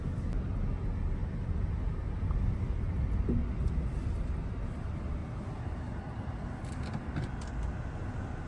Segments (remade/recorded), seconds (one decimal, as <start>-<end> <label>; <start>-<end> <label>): 0.0-8.5 recorded